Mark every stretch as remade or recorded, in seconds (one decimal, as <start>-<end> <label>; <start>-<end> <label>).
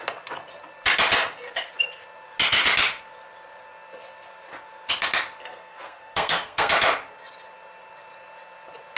0.0-5.4 recorded; 5.4-6.7 remade; 6.7-9.0 recorded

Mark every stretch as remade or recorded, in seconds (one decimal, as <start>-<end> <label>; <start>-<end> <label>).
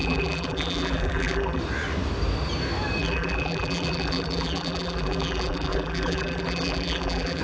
0.0-1.6 remade; 1.6-3.0 recorded; 3.0-7.4 remade